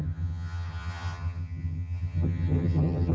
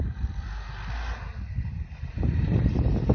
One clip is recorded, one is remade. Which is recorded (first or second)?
second